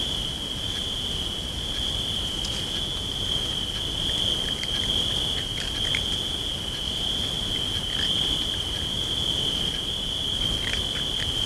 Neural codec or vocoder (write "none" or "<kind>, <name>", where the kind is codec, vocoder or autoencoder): none